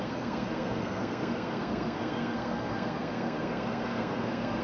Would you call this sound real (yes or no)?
no